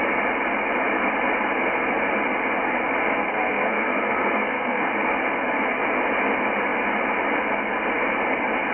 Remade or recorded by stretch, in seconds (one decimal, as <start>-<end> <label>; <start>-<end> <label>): 0.0-3.1 recorded; 3.1-4.9 remade; 4.9-8.7 recorded